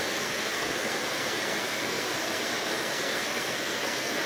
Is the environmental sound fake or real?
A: fake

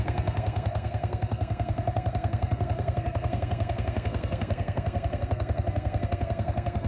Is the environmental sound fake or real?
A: fake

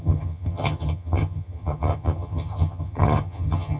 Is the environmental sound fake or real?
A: fake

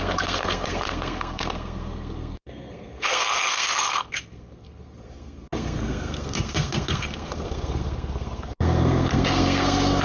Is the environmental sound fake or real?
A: fake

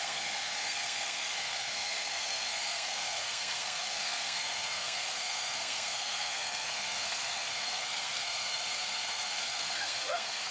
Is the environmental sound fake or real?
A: fake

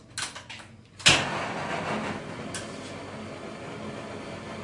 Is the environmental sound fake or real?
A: real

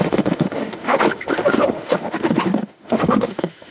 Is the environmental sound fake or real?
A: fake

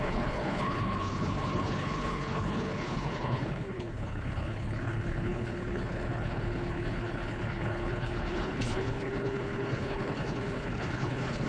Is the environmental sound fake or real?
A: fake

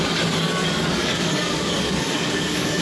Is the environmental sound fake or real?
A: fake